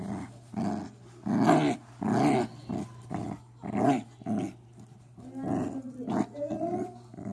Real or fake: real